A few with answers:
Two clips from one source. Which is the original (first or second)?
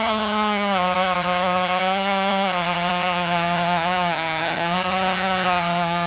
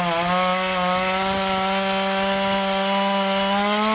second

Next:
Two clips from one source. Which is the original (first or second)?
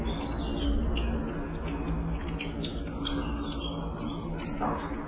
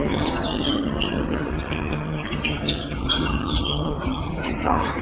first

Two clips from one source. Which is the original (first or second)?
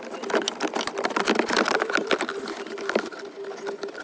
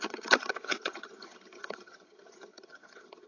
first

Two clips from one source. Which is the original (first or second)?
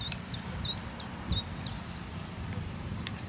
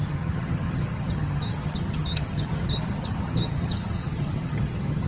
first